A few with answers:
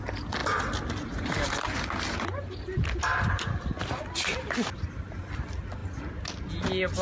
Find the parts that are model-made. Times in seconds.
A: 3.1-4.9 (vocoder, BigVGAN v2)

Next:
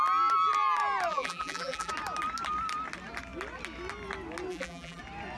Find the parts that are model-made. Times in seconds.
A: 1.1-1.9 (vocoder, BigVGAN v2); 4.5-5.0